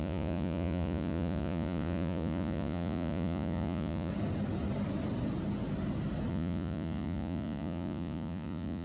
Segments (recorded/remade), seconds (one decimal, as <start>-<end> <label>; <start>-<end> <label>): 0.0-4.1 remade; 4.1-6.3 recorded; 6.3-8.8 remade

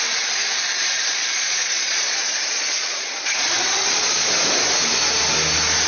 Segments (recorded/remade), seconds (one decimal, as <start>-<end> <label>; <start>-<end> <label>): 0.0-0.8 recorded; 0.8-4.3 remade; 4.3-5.9 recorded

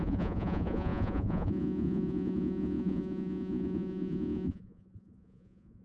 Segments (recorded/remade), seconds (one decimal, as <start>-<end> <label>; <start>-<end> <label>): 0.0-5.8 remade

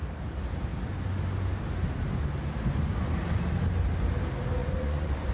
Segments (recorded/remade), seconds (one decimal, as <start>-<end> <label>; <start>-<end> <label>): 0.0-4.6 recorded; 4.6-5.3 remade

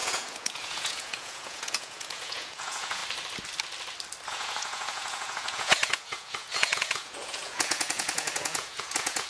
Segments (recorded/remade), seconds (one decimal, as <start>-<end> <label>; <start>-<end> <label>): 0.0-3.0 remade; 3.0-4.3 recorded; 4.3-9.3 remade

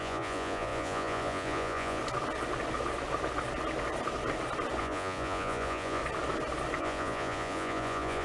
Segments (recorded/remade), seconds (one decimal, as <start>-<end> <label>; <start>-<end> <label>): 0.0-2.0 remade; 2.0-4.8 recorded; 4.8-6.0 remade; 6.0-6.8 recorded; 6.8-8.2 remade

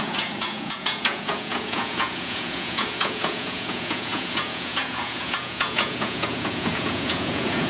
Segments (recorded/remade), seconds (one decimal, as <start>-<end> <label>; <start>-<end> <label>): 0.0-7.7 remade